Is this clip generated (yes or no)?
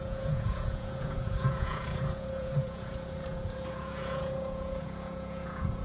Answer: yes